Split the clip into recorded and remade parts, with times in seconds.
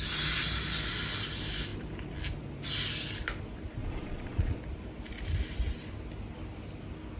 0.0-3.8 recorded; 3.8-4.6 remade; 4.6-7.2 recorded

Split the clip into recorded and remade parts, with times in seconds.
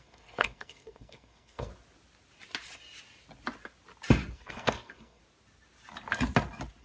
0.0-1.7 remade; 1.7-4.3 recorded; 4.3-5.2 remade; 5.2-6.8 recorded